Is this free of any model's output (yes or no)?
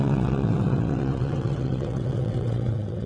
no